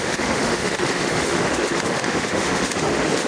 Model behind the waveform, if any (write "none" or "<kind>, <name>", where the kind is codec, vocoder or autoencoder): autoencoder, DAC-VAE